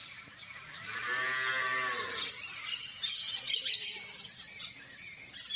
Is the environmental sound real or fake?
real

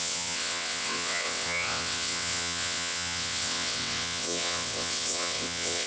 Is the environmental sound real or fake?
fake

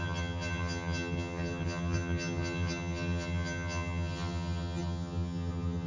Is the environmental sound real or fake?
fake